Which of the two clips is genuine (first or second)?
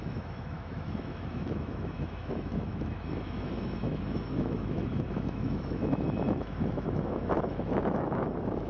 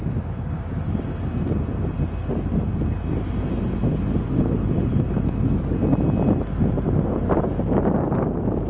second